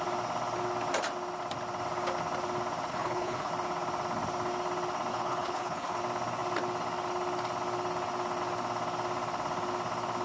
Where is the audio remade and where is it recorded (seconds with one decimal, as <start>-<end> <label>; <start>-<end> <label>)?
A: 0.0-2.9 recorded; 2.9-3.5 remade; 3.5-5.1 recorded; 5.1-6.0 remade; 6.0-10.2 recorded